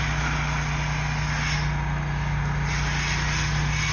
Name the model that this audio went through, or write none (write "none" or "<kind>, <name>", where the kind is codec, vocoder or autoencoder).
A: none